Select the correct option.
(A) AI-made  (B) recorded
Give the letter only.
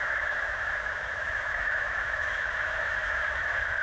A